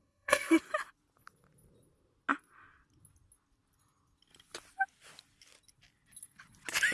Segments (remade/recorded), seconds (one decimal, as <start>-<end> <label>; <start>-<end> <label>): 0.0-0.6 remade; 0.6-6.9 recorded